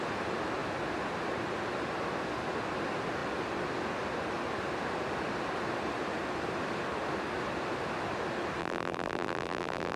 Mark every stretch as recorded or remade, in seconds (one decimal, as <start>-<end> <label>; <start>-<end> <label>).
0.0-8.6 recorded; 8.6-10.0 remade